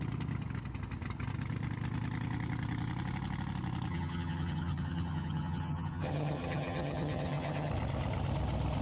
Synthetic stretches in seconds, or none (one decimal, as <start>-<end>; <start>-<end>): 3.9-7.7